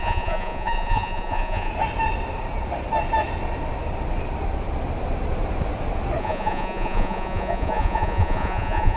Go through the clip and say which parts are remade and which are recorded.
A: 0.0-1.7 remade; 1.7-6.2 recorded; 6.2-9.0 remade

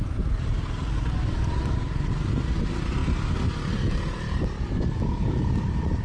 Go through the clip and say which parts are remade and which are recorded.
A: 0.0-6.0 recorded

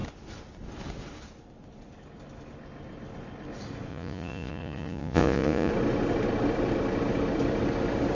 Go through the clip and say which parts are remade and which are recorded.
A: 0.0-3.9 recorded; 3.9-5.7 remade; 5.7-8.1 recorded

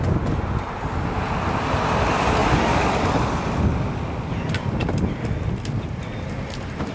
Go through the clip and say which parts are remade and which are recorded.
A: 0.0-6.9 recorded

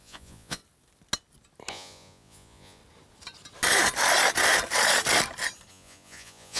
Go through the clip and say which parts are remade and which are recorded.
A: 0.0-0.6 remade; 0.6-1.7 recorded; 1.7-2.8 remade; 2.8-5.7 recorded; 5.7-6.6 remade

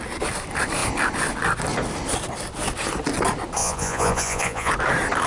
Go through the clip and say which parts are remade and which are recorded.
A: 0.0-3.6 recorded; 3.6-4.7 remade; 4.7-5.3 recorded

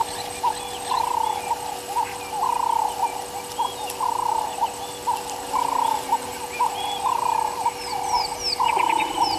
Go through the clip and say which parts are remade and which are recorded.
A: 0.0-9.4 recorded

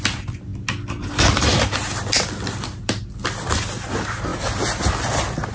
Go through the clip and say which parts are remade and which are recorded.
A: 0.0-5.5 recorded